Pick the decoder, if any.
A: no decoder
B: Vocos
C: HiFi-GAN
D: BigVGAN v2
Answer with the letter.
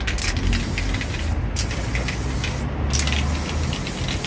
A